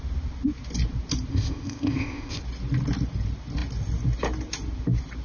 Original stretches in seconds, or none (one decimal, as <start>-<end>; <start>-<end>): 0.0-1.3; 2.4-5.2

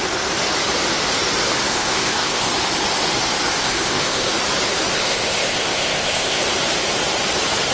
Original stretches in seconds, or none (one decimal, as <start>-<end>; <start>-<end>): 0.0-1.7; 2.5-3.6; 4.3-4.9; 6.4-7.7

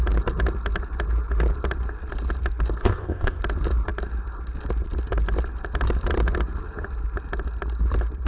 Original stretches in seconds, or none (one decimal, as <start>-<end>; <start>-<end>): 0.0-2.8; 3.4-8.3